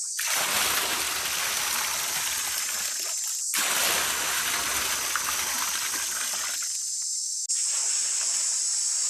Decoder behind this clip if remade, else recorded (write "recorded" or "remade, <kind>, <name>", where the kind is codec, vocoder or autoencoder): recorded